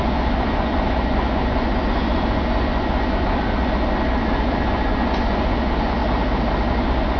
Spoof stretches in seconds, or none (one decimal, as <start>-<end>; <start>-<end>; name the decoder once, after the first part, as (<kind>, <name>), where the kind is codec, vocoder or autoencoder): 0.0-6.0 (vocoder, Vocos); 6.7-7.2